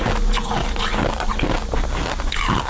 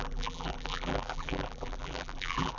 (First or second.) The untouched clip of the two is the first